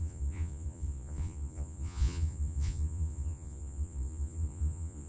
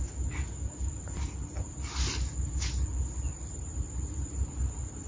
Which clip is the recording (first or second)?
second